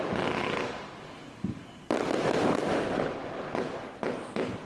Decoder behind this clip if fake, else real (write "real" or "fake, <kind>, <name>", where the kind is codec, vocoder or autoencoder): real